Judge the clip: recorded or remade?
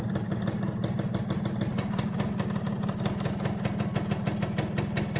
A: recorded